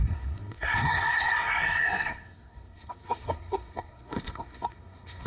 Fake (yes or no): yes